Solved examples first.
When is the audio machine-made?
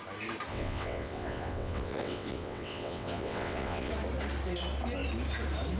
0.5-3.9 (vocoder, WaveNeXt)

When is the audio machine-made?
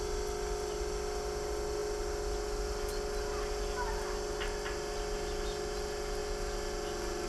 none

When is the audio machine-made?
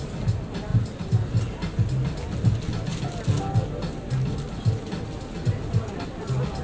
none